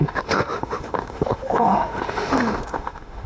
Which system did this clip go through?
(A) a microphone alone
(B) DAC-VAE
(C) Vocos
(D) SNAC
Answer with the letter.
B